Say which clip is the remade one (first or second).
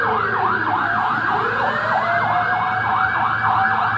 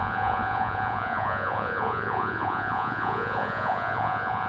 second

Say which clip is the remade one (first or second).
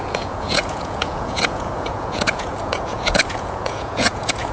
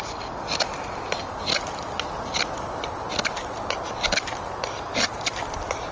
first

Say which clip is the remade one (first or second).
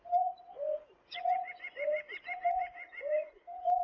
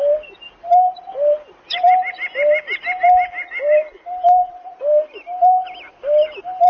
first